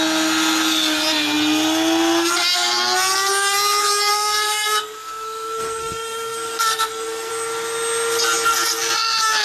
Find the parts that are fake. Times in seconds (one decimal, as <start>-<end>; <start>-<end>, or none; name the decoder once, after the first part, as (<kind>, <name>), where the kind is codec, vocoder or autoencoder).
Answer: 4.1-7.3 (codec, SNAC)